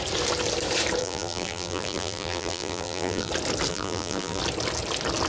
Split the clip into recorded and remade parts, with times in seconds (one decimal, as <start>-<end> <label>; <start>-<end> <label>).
0.0-1.0 recorded; 1.0-3.3 remade; 3.3-3.7 recorded; 3.7-4.4 remade; 4.4-5.3 recorded